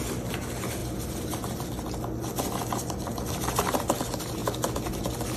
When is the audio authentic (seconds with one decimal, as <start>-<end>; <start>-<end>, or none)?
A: 0.0-5.4